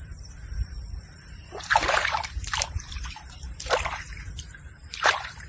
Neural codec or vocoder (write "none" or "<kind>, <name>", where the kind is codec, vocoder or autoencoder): vocoder, BigVGAN v2